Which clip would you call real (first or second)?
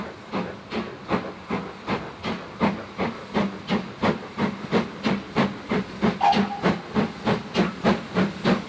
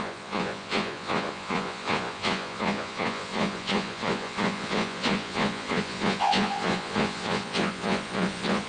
first